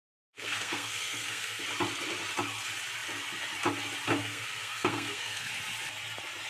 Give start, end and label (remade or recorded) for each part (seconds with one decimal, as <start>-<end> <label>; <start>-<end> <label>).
0.0-1.6 remade; 1.6-4.2 recorded; 4.2-5.5 remade; 5.5-6.5 recorded